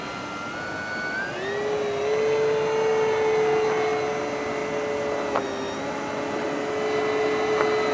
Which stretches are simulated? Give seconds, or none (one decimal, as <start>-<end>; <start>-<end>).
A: none